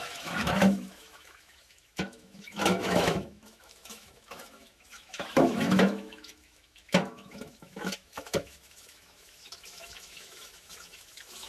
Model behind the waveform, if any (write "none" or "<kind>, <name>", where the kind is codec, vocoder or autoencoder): autoencoder, DAC-VAE